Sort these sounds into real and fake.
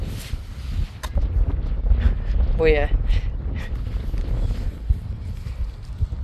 real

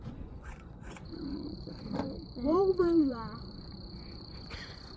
fake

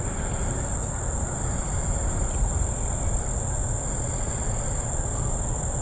real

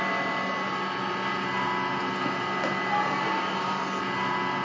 real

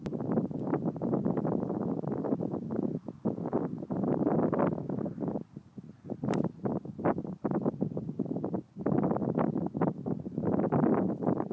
real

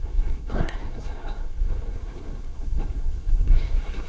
fake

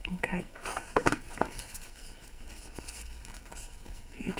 fake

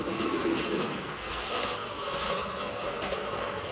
fake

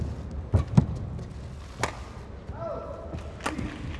real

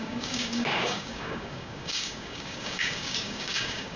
fake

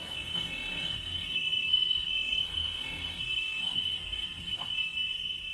fake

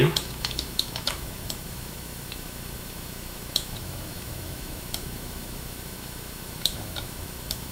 fake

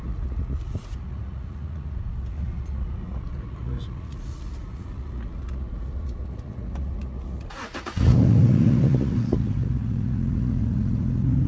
fake